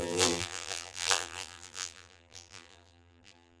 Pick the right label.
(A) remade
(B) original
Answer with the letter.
A